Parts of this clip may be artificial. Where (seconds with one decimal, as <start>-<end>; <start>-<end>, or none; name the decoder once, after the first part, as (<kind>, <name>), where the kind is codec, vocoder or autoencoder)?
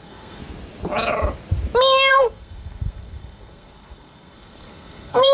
0.0-0.4 (codec, SNAC); 2.1-5.3